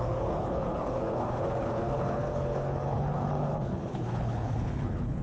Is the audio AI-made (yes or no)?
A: yes